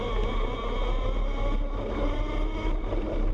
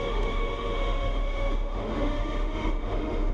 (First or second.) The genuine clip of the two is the first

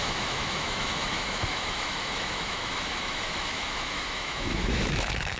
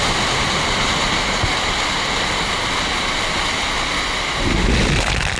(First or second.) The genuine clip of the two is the second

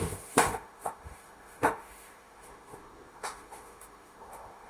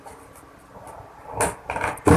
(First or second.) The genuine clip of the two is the second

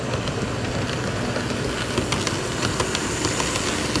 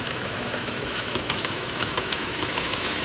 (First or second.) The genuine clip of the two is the first